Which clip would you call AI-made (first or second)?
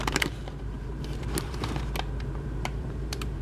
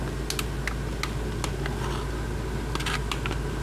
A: first